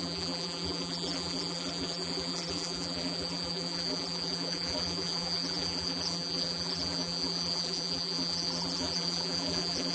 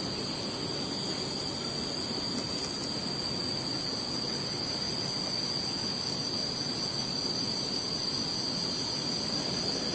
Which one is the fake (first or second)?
first